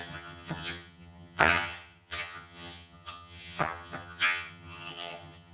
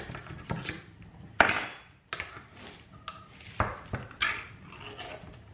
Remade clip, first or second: first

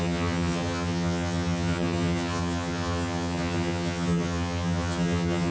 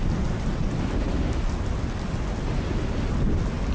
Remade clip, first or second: first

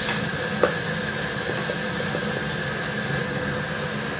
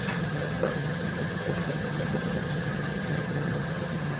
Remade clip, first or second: second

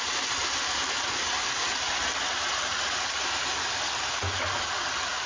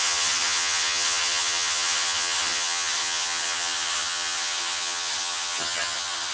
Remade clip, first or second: second